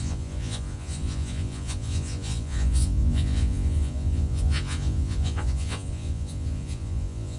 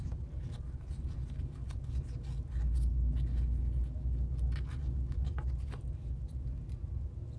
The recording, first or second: second